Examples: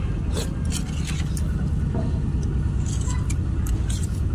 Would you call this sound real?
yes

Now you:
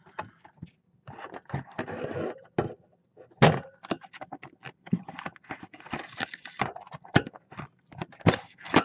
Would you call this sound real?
yes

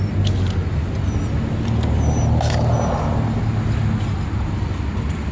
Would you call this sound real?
yes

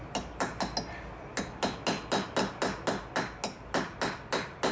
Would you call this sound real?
yes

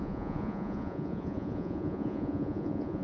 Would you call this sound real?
no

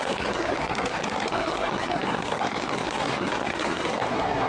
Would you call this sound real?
no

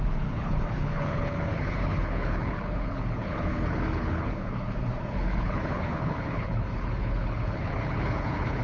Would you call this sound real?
no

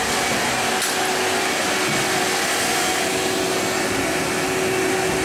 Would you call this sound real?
yes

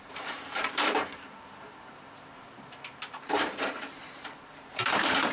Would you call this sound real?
no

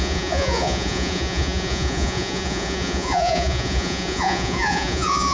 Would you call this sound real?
no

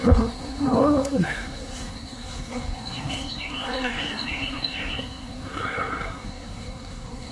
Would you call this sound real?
no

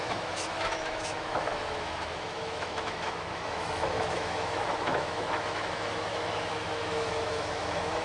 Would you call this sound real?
no